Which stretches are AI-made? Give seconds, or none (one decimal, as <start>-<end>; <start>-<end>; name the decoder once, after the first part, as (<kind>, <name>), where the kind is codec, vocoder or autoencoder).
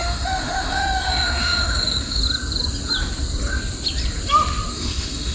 0.0-2.2 (autoencoder, DAC-VAE); 4.7-5.3